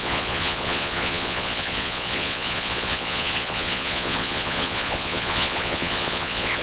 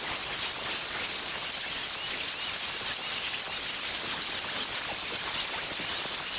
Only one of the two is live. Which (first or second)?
second